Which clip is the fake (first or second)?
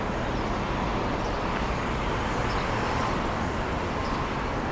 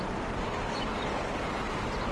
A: second